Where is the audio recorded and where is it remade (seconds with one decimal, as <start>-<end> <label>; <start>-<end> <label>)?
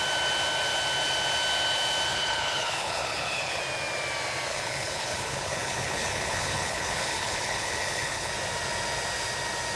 0.0-2.1 recorded; 2.1-3.6 remade; 3.6-4.5 recorded; 4.5-8.3 remade; 8.3-9.8 recorded